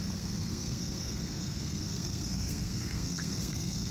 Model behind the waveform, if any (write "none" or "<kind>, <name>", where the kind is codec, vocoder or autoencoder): codec, SNAC